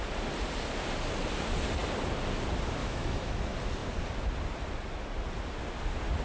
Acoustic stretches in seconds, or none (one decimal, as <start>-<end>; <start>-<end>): 0.0-2.8; 3.3-6.2